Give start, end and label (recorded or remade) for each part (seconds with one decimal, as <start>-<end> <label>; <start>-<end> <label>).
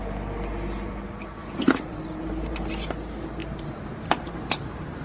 0.0-1.4 recorded; 1.4-2.7 remade; 2.7-3.4 recorded; 3.4-4.0 remade; 4.0-5.0 recorded